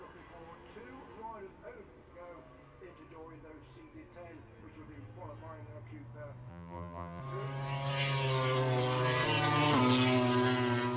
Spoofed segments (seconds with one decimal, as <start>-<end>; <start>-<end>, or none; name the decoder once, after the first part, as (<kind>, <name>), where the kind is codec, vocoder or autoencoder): 6.5-7.2 (vocoder, BigVGAN v2)